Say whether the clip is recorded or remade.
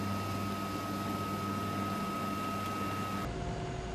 recorded